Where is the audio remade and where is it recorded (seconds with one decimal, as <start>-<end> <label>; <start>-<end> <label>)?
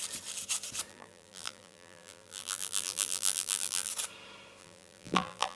0.0-0.9 recorded; 0.9-3.9 remade; 3.9-4.6 recorded; 4.6-5.6 remade